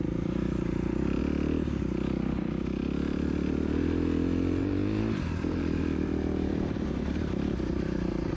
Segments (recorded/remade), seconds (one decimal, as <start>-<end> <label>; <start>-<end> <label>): 0.0-1.2 remade; 1.2-5.0 recorded; 5.0-6.5 remade; 6.5-7.0 recorded; 7.0-8.4 remade